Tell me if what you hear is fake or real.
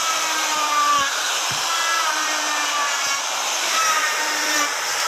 fake